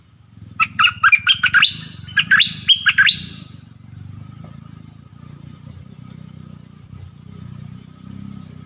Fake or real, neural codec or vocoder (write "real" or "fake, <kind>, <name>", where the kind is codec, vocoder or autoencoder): real